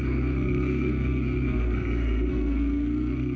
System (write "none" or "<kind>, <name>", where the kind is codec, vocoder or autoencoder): codec, SNAC